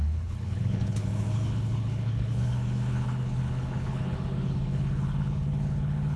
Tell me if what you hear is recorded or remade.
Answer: remade